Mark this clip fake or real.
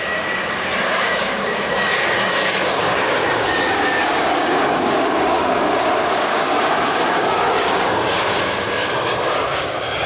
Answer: fake